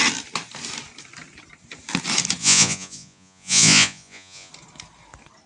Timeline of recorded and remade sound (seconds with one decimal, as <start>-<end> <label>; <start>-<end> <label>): 0.0-2.4 recorded; 2.4-4.5 remade; 4.5-5.5 recorded